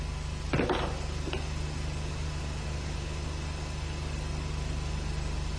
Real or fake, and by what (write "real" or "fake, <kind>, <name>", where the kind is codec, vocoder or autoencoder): real